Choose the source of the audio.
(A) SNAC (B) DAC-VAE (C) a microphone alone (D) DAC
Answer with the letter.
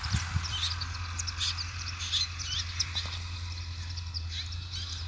C